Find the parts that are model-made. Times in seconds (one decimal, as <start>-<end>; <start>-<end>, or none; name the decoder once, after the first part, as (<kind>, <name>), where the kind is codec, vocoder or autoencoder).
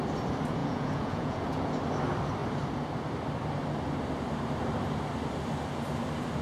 0.6-1.7 (vocoder, Vocos)